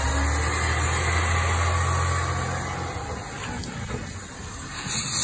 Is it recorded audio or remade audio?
recorded